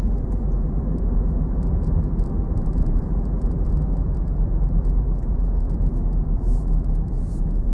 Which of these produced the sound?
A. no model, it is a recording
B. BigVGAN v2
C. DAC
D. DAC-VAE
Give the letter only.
B